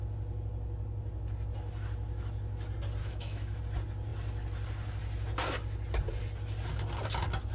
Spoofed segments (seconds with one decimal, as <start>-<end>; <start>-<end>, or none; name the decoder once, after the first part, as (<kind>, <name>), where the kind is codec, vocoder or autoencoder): 3.0-3.6 (autoencoder, DAC-VAE)